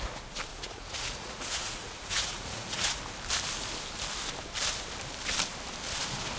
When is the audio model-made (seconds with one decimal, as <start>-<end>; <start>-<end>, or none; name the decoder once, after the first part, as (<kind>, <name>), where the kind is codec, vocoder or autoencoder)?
0.5-3.0 (vocoder, Vocos)

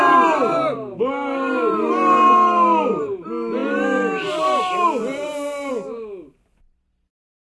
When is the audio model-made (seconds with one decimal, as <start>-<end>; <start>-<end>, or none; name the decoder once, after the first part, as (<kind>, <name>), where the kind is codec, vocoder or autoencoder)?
none